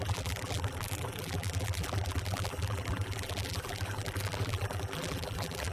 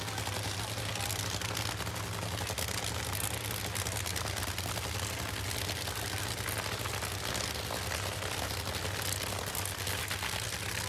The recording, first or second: second